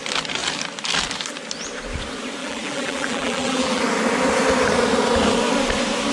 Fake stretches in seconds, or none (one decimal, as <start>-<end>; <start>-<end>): 2.4-3.8